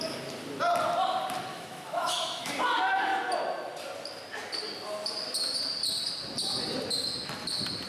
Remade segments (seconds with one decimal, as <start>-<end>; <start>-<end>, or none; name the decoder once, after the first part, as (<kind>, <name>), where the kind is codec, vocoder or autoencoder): 1.5-2.5 (autoencoder, DAC-VAE)

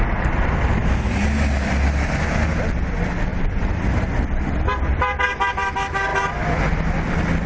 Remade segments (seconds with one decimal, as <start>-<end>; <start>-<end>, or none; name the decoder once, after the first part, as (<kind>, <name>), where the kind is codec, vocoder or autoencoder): none

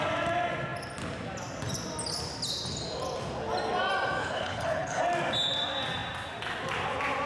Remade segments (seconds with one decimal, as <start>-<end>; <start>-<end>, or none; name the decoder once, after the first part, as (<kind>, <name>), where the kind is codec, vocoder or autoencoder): 4.2-5.0 (codec, HILCodec)

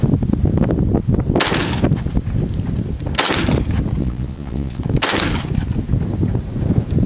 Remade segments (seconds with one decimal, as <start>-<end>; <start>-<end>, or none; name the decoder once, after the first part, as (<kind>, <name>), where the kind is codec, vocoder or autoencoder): 4.0-4.8 (vocoder, Vocos)

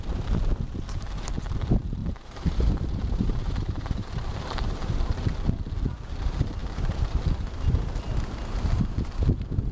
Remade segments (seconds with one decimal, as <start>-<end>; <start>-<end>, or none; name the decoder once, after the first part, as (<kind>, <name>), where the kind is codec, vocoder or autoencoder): 2.0-4.9 (vocoder, BigVGAN v2); 6.6-7.2

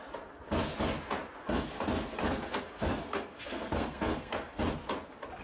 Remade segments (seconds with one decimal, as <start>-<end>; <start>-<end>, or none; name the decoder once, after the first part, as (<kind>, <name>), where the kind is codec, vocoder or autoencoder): 1.4-4.6 (codec, SNAC)

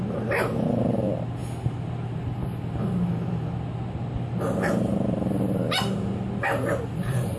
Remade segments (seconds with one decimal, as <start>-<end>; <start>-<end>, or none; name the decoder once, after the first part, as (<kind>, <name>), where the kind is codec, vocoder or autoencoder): none